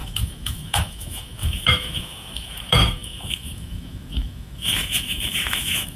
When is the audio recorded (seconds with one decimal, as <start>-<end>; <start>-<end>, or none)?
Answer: none